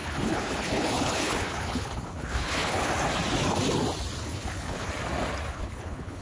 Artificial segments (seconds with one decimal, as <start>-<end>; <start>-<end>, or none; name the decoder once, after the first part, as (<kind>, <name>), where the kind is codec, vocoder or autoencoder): 0.0-2.9 (codec, HILCodec); 4.2-4.9; 5.5-6.2